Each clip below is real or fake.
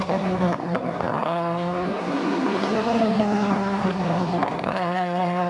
fake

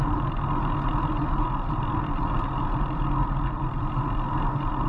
real